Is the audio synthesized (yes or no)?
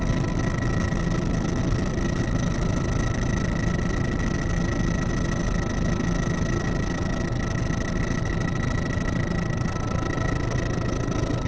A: no